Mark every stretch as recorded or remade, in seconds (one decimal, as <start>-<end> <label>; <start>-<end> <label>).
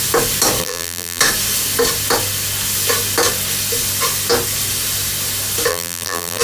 0.0-0.6 recorded; 0.6-1.2 remade; 1.2-5.7 recorded; 5.7-6.4 remade